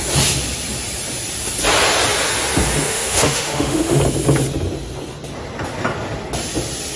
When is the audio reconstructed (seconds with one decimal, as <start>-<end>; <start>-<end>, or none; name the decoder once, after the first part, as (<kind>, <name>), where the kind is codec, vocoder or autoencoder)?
2.9-4.0 (autoencoder, DAC-VAE)